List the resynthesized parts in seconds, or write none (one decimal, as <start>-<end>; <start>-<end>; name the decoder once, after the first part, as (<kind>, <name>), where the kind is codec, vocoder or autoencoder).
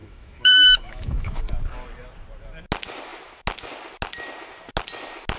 0.0-1.4 (autoencoder, DAC-VAE)